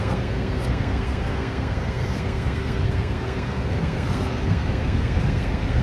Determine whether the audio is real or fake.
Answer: fake